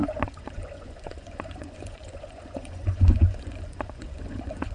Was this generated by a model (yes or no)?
yes